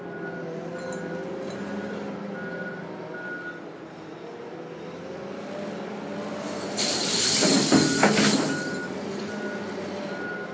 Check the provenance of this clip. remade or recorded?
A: recorded